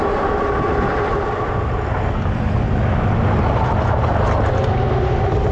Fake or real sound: real